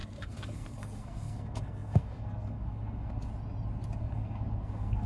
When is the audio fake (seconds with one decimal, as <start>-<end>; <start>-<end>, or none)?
0.0-3.3; 4.0-5.1